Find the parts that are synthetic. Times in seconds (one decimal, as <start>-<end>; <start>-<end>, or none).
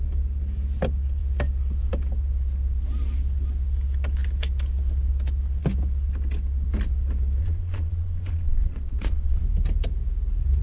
7.4-9.4